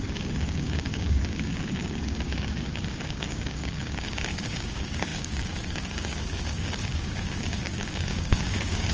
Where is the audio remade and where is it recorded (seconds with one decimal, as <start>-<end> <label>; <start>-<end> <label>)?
0.0-8.9 remade